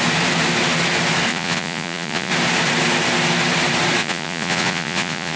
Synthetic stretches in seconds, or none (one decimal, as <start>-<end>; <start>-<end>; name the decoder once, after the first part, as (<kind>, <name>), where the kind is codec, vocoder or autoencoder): 1.3-2.3 (vocoder, Vocos); 4.0-5.4